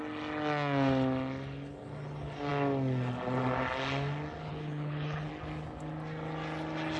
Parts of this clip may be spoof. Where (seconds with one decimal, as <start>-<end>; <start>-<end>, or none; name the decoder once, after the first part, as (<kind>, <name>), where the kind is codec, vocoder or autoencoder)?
4.5-5.3 (codec, HILCodec)